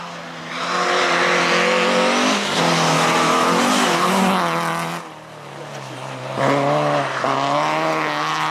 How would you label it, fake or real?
real